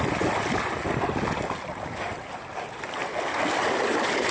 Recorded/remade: recorded